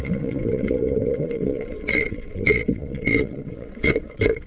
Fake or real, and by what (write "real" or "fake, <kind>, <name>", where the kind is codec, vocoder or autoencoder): fake, vocoder, WaveNeXt